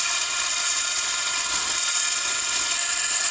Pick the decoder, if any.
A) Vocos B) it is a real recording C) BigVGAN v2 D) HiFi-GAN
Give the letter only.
B